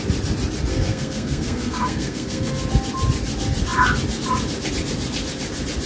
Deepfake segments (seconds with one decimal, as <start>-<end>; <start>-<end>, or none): 0.7-2.5